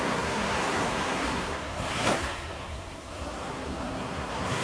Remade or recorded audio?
remade